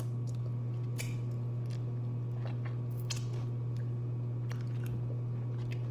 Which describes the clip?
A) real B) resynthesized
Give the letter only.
A